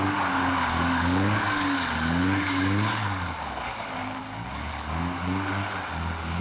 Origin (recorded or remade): remade